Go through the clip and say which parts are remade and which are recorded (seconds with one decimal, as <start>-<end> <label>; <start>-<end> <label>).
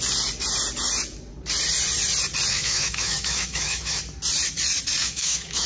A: 0.0-2.5 recorded; 2.5-4.0 remade; 4.0-5.0 recorded; 5.0-5.7 remade